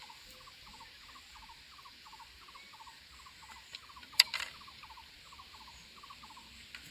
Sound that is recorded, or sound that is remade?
recorded